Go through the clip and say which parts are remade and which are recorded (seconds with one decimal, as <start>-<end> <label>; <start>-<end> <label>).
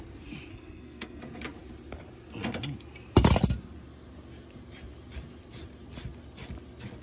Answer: 0.0-0.5 recorded; 0.5-1.2 remade; 1.2-7.0 recorded